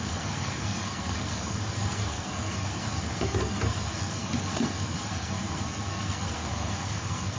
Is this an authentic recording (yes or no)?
no